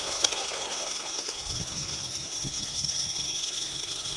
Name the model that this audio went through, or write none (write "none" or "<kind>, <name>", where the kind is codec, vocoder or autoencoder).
codec, SNAC